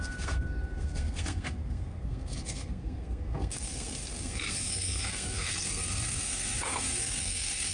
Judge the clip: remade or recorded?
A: remade